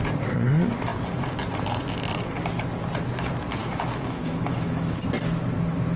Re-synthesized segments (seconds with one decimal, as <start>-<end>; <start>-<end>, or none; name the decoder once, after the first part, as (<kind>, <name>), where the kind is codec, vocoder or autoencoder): 3.6-5.0 (autoencoder, DAC-VAE)